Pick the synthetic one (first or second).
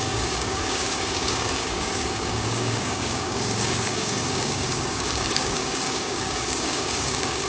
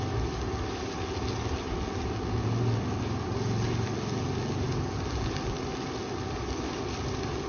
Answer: first